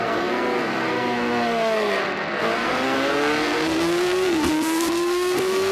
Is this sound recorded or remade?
remade